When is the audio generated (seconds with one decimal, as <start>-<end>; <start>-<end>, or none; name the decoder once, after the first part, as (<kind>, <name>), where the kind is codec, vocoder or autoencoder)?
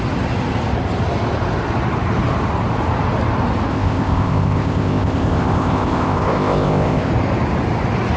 3.7-7.1 (codec, ZipCodec)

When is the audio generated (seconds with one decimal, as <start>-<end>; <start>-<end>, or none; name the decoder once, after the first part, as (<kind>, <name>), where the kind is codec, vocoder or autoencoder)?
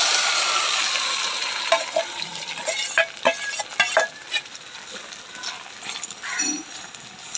none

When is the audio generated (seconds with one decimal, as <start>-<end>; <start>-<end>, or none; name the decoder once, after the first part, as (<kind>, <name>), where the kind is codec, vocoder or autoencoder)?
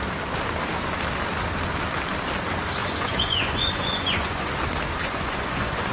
2.8-4.5 (vocoder, Vocos); 5.0-5.9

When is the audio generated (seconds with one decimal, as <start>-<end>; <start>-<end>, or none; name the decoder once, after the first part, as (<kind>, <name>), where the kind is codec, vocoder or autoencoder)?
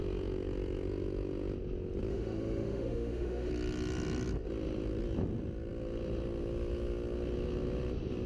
2.1-3.5 (autoencoder, DAC-VAE)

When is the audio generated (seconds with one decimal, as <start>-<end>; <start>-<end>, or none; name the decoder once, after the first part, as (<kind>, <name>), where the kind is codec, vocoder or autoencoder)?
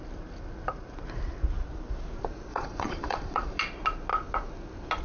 2.5-3.6 (vocoder, Vocos)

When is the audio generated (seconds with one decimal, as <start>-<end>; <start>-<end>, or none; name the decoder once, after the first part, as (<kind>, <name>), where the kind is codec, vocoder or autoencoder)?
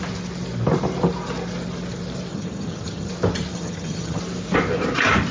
2.3-3.1 (vocoder, HiFi-GAN); 3.5-4.2